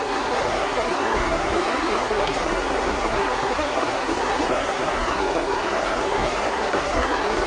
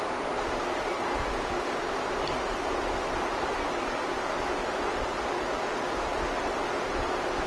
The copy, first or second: first